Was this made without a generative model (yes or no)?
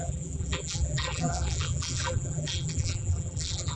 no